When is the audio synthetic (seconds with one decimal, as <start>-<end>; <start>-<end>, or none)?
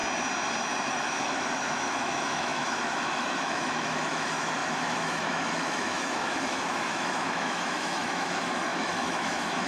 0.9-9.7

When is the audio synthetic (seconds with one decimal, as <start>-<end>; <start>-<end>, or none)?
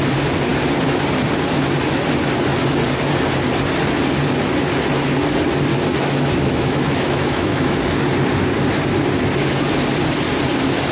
5.7-7.8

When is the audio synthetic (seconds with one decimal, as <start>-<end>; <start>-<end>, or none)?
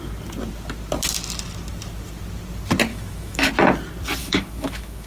2.9-3.5; 4.2-5.1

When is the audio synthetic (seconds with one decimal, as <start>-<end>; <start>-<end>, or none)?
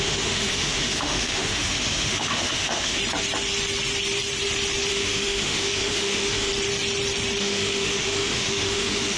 0.0-3.0; 4.9-6.5; 7.4-9.2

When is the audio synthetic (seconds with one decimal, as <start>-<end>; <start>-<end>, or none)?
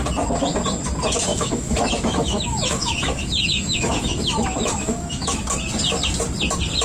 1.3-5.4